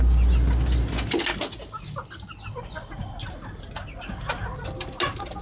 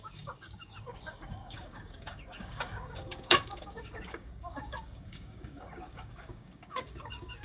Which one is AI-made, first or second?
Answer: second